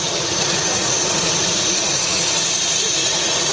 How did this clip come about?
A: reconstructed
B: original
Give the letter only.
A